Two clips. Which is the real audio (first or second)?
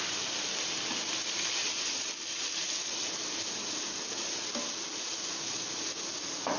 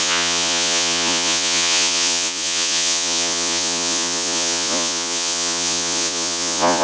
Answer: first